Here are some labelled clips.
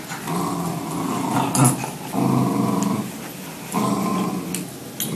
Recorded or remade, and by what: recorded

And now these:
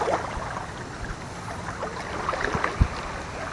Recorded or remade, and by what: recorded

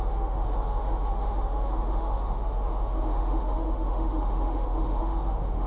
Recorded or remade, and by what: remade, autoencoder, DAC-VAE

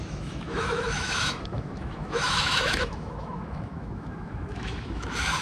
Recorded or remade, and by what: remade, autoencoder, DAC-VAE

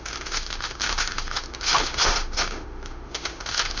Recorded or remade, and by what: remade, autoencoder, DAC-VAE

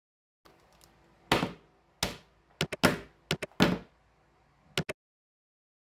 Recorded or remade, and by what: recorded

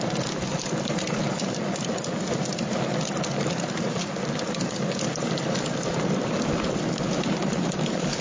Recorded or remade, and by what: recorded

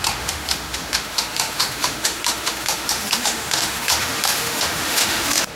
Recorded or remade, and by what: remade, autoencoder, DAC-VAE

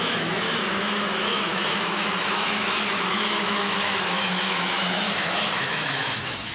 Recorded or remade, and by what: remade, autoencoder, DAC-VAE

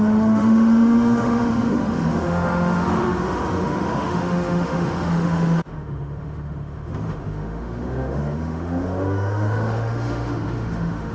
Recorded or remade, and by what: remade, autoencoder, DAC-VAE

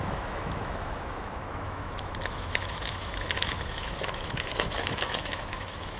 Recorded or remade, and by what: remade, autoencoder, DAC-VAE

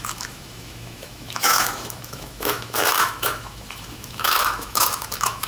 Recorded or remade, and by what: remade, autoencoder, DAC-VAE